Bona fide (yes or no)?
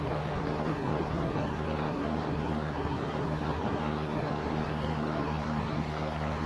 no